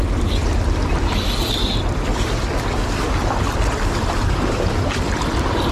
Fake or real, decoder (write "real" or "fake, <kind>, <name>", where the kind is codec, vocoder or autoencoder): real